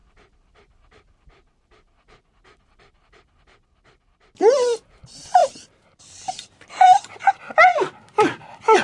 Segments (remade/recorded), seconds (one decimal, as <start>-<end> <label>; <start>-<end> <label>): 0.0-5.4 recorded; 5.4-7.3 remade; 7.3-8.8 recorded